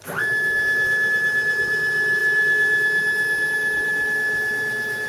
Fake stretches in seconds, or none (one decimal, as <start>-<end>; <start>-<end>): none